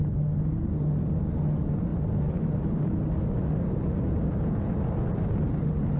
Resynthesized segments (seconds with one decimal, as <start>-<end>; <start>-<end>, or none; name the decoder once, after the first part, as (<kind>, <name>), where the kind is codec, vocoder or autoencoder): none